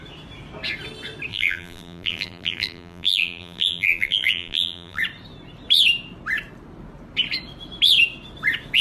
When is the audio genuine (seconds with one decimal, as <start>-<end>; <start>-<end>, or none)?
0.0-1.3; 5.0-8.8